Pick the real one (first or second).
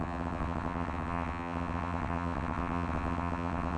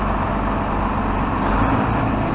second